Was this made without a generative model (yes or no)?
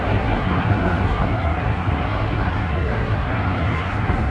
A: no